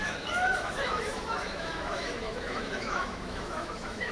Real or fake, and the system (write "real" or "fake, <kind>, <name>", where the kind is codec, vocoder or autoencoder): fake, autoencoder, DAC-VAE